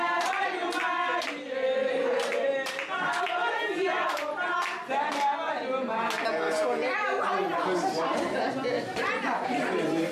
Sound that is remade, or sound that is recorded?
recorded